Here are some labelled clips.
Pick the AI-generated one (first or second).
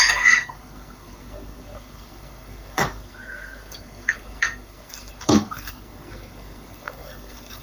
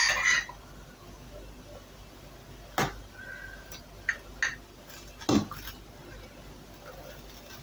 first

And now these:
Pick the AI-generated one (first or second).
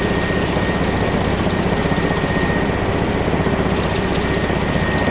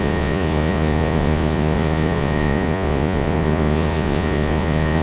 second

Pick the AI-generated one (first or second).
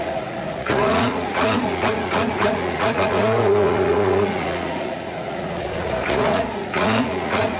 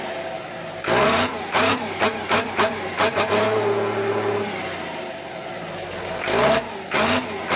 first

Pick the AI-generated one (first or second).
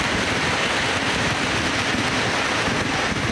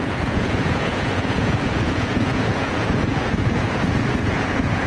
second